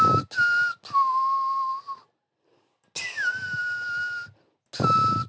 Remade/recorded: recorded